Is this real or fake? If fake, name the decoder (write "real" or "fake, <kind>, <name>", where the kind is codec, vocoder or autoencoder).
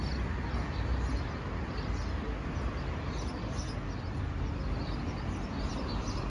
real